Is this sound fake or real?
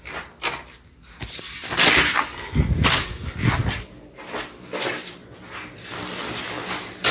real